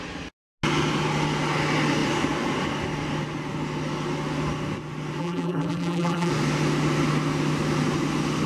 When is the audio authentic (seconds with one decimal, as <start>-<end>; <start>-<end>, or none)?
0.0-5.2; 6.3-8.5